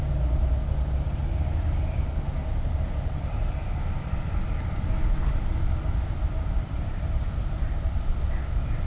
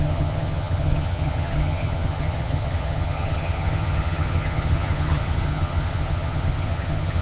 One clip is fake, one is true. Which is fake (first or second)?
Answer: second